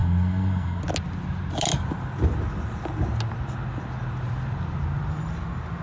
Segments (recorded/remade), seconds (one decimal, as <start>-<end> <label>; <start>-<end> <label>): 0.0-0.8 remade; 0.8-5.8 recorded